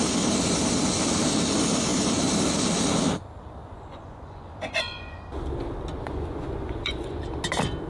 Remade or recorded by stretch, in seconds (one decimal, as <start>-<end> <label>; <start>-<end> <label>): 0.0-3.6 recorded; 3.6-5.2 remade; 5.2-5.9 recorded; 5.9-7.2 remade; 7.2-7.9 recorded

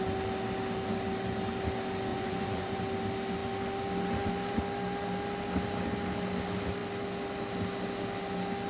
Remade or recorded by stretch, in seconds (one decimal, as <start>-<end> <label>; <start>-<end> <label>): 0.0-2.1 recorded; 2.1-2.8 remade; 2.8-8.7 recorded

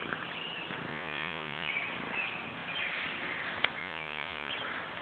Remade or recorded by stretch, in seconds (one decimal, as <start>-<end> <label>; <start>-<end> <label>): 0.0-0.9 recorded; 0.9-1.7 remade; 1.7-3.8 recorded; 3.8-4.5 remade; 4.5-5.0 recorded

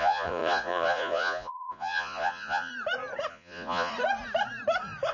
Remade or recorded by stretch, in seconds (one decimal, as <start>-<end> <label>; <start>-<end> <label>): 0.0-2.7 remade; 2.7-3.3 recorded; 3.3-3.9 remade; 3.9-5.1 recorded